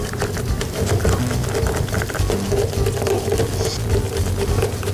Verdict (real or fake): real